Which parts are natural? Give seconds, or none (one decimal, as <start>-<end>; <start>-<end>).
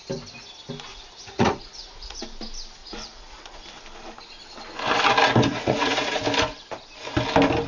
0.0-0.9; 2.2-2.8; 3.6-5.5; 6.2-7.7